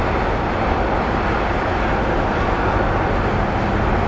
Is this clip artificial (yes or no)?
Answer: no